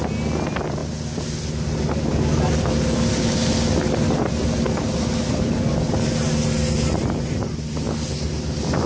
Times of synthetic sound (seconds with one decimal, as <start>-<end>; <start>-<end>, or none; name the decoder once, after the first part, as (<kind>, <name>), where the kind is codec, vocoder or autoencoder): none